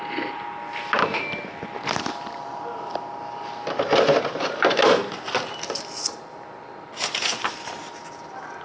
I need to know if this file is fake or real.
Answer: real